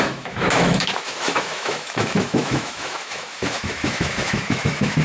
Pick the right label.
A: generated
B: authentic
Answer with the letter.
A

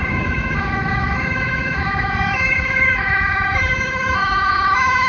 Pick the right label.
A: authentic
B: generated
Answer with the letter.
B